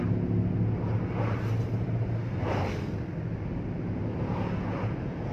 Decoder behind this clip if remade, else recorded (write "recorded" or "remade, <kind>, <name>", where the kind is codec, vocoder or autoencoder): recorded